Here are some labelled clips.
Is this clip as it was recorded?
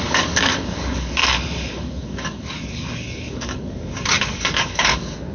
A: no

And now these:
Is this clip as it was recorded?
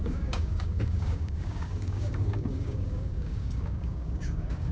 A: no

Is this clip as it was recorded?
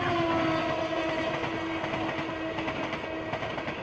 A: yes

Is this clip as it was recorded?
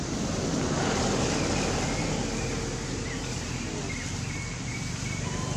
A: yes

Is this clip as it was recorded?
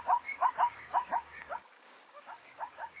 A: no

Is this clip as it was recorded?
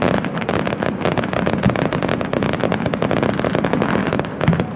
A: yes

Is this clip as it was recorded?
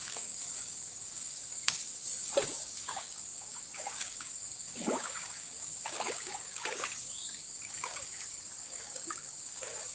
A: no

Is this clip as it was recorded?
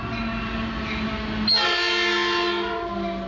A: yes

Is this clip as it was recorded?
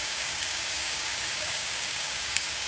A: no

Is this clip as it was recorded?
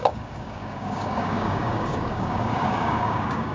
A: no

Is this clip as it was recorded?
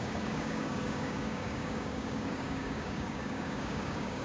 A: no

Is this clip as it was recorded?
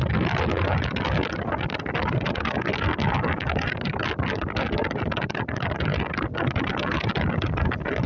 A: yes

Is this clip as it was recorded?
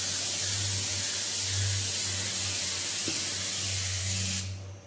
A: yes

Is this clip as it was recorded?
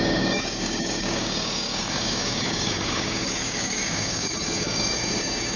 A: no